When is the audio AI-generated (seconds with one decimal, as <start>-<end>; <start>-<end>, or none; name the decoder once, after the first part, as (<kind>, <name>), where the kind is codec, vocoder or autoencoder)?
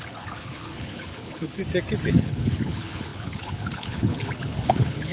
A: 0.0-1.6 (codec, HILCodec); 2.1-5.1